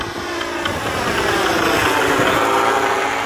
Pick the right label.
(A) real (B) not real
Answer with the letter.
A